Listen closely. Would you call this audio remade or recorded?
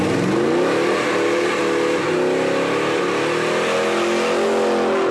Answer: recorded